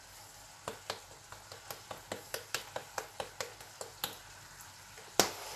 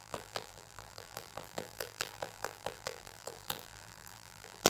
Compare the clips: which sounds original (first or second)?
first